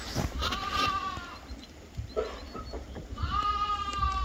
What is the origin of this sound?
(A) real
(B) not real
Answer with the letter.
A